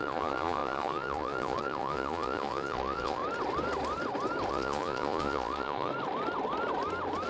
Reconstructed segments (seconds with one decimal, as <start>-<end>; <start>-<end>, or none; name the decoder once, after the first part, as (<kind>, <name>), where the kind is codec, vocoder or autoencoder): 0.0-3.2 (vocoder, Vocos); 4.5-5.9